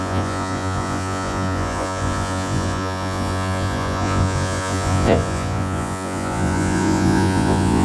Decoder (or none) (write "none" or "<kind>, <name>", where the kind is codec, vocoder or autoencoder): vocoder, Vocos